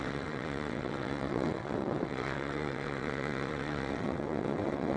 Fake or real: fake